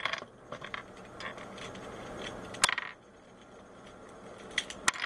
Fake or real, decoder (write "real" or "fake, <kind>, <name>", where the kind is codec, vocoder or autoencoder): real